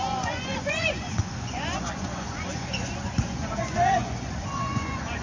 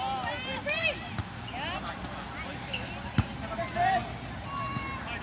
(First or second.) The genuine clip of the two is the second